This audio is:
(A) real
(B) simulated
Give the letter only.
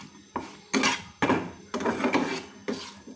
A